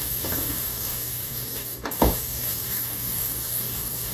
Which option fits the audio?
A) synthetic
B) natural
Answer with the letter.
A